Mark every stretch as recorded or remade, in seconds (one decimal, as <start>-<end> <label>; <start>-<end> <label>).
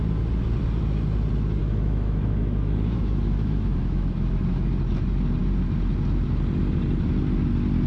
0.0-1.6 recorded; 1.6-4.7 remade; 4.7-7.9 recorded